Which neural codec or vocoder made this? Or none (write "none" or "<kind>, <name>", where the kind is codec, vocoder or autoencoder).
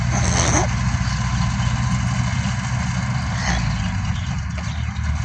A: none